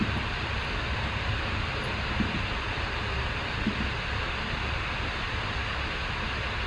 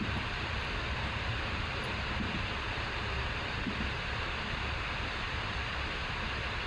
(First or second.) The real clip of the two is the first